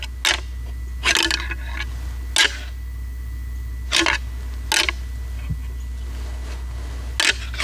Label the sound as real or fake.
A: real